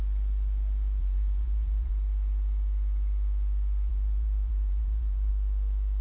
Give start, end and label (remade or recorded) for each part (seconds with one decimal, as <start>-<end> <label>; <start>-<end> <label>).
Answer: 0.0-1.0 recorded; 1.0-1.9 remade; 1.9-3.9 recorded; 3.9-5.3 remade; 5.3-6.0 recorded